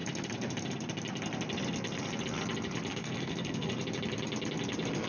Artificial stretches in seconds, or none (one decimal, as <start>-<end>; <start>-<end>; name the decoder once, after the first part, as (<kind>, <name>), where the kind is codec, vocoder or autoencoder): 2.9-3.7 (codec, SNAC)